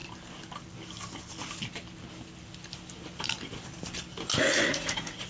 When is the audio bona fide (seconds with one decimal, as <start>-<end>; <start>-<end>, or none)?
0.0-4.7